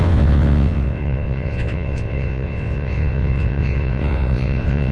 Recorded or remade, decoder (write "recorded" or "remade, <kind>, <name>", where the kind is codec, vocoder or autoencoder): remade, vocoder, WaveNeXt